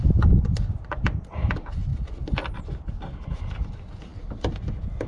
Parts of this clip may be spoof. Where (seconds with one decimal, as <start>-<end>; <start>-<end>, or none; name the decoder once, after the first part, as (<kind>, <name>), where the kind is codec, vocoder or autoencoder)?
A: none